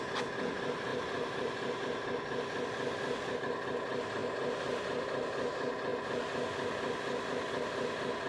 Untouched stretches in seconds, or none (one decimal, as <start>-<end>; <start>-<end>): 0.0-0.9; 1.8-8.3